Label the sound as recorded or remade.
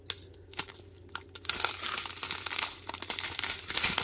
recorded